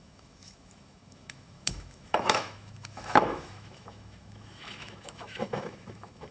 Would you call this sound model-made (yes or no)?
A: yes